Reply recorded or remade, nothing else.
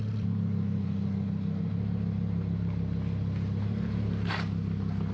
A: recorded